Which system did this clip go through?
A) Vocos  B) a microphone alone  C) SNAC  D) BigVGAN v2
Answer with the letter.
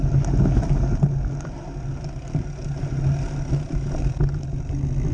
B